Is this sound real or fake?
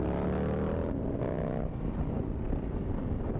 real